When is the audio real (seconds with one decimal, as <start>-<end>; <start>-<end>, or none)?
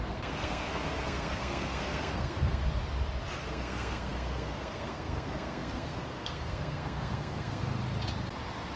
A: 2.6-3.5; 7.8-8.8